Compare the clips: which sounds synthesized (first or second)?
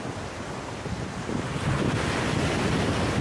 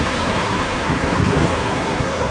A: second